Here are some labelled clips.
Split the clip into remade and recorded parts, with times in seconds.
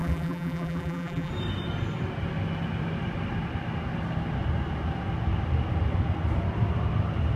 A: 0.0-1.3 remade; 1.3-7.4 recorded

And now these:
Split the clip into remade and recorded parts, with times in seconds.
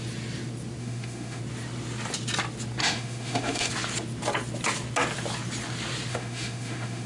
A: 0.0-0.8 recorded; 0.8-1.4 remade; 1.4-2.8 recorded; 2.8-3.7 remade; 3.7-6.1 recorded; 6.1-7.1 remade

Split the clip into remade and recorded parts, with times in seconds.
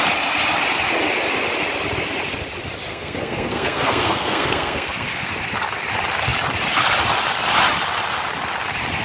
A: 0.0-2.9 recorded; 2.9-5.3 remade; 5.3-9.0 recorded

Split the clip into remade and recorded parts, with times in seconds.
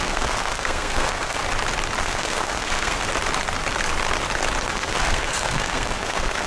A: 0.0-1.4 remade; 1.4-2.0 recorded; 2.0-3.1 remade; 3.1-4.7 recorded; 4.7-6.5 remade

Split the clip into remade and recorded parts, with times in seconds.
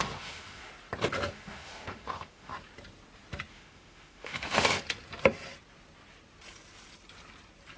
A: 0.0-0.7 remade; 0.7-1.3 recorded; 1.3-2.5 remade; 2.5-3.5 recorded; 3.5-4.8 remade; 4.8-7.8 recorded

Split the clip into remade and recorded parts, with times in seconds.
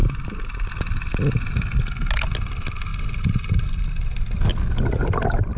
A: 0.0-5.6 recorded